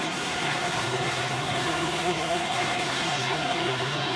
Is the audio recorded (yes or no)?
no